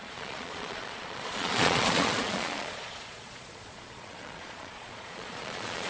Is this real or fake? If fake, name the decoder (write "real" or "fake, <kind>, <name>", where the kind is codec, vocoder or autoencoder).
fake, vocoder, Vocos